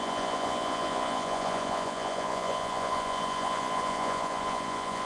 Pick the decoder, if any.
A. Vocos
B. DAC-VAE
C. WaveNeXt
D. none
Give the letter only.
A